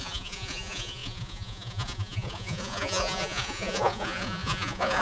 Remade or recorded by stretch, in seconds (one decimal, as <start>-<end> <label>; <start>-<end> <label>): 0.0-5.0 remade